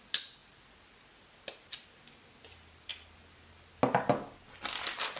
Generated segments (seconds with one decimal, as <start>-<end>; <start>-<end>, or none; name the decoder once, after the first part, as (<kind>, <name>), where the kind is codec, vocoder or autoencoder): none